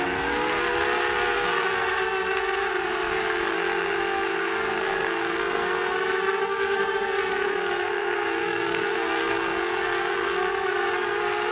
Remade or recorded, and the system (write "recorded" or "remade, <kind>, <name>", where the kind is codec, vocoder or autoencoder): remade, codec, SNAC